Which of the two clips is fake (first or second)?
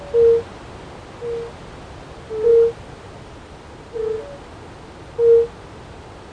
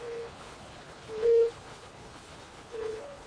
second